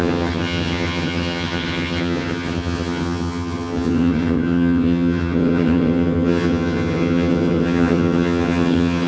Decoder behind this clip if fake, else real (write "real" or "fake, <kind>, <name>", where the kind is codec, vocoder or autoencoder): fake, vocoder, HiFi-GAN